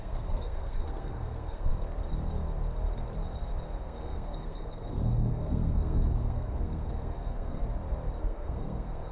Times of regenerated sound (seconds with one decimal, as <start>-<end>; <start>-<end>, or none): 0.0-1.7; 3.8-7.6; 8.2-9.1